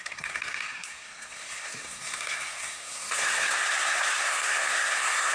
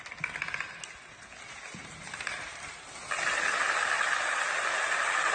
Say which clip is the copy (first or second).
first